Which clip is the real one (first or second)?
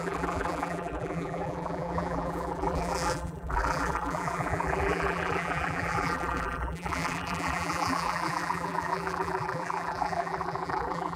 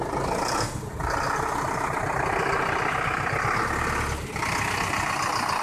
second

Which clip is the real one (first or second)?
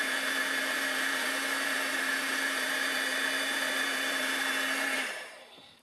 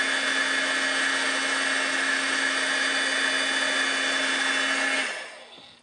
second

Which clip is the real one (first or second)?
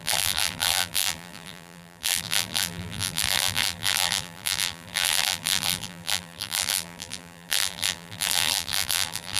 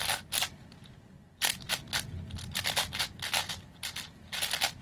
second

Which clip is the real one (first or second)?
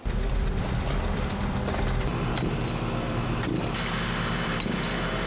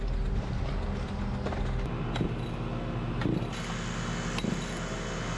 second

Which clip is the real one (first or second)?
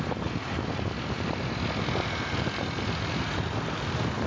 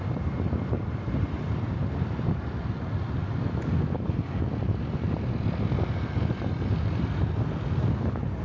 first